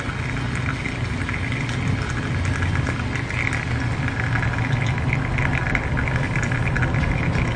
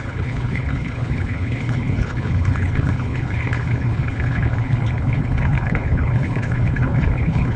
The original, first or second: first